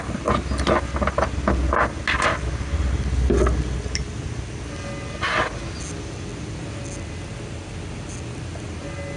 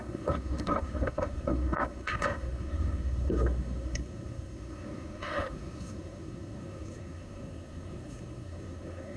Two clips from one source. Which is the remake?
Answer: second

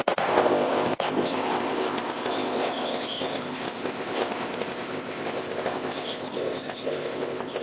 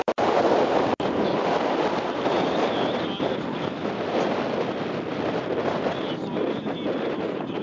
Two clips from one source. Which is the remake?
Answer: first